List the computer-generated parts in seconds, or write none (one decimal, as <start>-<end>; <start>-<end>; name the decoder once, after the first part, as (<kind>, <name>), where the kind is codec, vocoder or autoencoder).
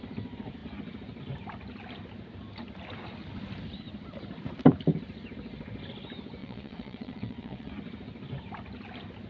6.4-7.7 (vocoder, WaveNeXt)